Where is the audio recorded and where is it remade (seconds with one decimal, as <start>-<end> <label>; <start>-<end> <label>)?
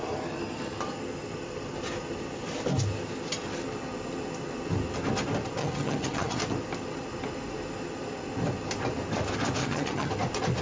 0.0-5.6 recorded; 5.6-6.4 remade; 6.4-9.6 recorded; 9.6-10.1 remade; 10.1-10.6 recorded